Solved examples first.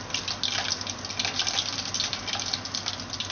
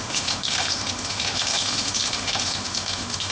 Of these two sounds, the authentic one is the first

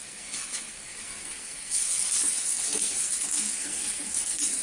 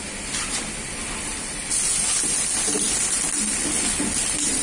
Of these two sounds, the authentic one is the second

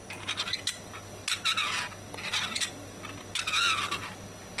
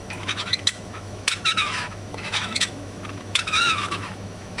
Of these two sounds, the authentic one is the first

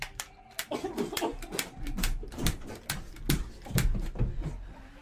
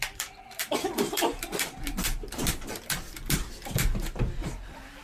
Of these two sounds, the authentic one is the first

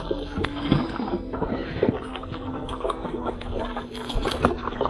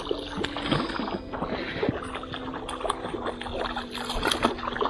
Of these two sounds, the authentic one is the second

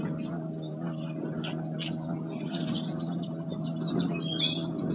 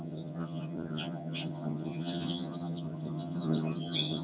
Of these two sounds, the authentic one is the first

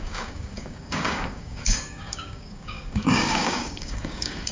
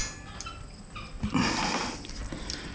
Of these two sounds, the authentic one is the second